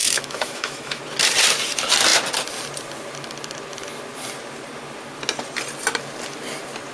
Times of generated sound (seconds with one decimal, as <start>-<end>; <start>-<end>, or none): 0.0-1.0